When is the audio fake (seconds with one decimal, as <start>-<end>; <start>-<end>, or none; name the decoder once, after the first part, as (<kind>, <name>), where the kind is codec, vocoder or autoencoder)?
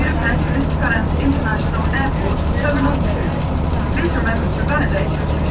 1.5-4.8 (vocoder, BigVGAN v2)